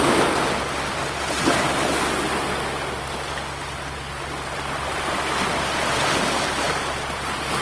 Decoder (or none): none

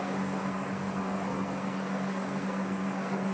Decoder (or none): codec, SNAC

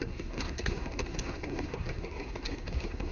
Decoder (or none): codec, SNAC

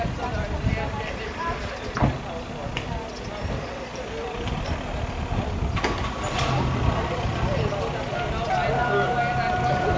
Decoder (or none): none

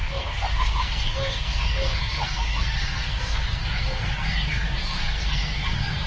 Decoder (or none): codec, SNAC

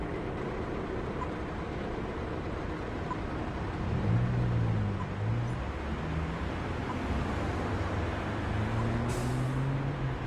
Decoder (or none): none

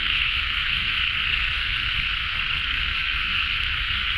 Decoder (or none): codec, SNAC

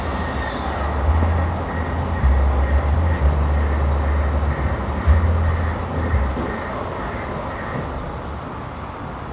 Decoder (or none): none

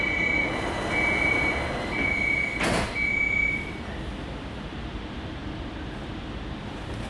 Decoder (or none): none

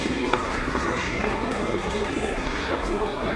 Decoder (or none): codec, SNAC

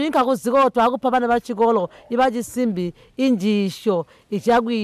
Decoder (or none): none